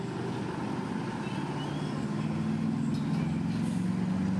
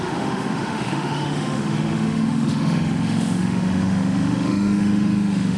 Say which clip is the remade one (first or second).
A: second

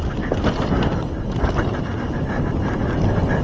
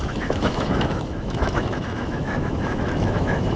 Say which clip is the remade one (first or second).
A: second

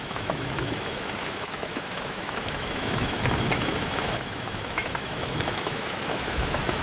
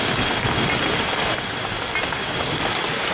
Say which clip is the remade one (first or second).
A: first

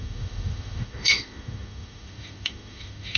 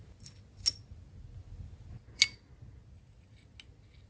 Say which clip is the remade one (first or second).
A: first